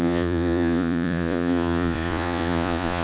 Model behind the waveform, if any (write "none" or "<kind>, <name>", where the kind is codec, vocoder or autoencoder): vocoder, Vocos